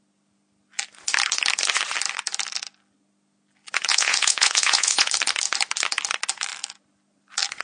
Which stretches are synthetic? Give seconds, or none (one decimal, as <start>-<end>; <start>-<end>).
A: 3.9-5.1